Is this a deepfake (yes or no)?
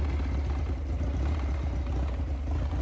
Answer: no